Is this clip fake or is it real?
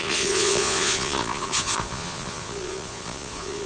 fake